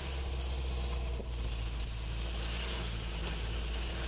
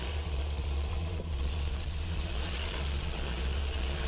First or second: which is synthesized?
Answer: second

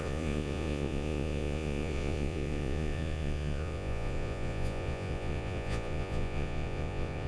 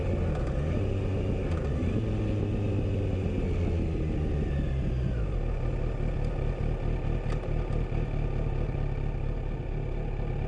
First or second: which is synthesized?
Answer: first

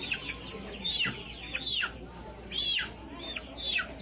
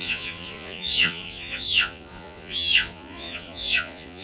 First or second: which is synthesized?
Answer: second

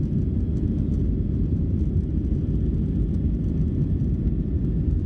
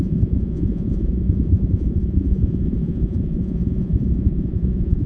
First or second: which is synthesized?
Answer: second